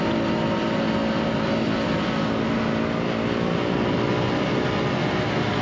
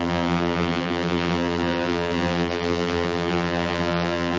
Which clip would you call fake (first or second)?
second